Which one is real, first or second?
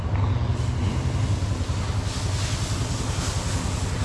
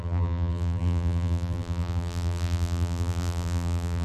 first